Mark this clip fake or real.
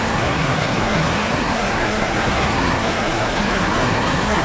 fake